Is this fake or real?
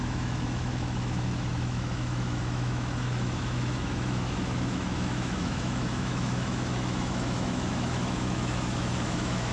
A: fake